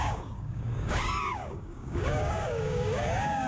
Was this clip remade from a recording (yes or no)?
yes